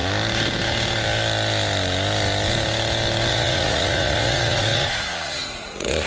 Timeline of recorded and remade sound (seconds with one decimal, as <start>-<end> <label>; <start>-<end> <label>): 0.0-3.3 recorded; 3.3-6.1 remade